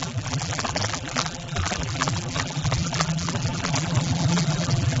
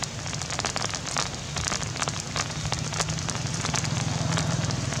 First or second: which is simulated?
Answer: first